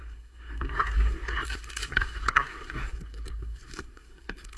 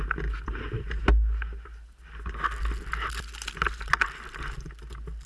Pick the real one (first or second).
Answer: second